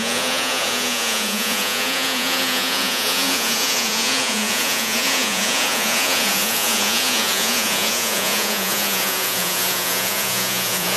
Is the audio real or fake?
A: fake